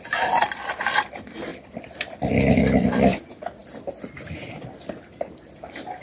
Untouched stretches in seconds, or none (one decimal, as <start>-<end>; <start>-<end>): 0.0-6.0